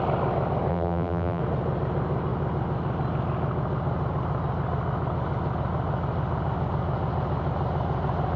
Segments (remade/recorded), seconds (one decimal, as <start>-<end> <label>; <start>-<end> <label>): 0.0-0.7 recorded; 0.7-1.4 remade; 1.4-8.4 recorded